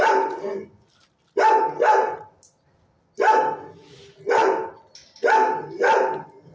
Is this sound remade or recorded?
recorded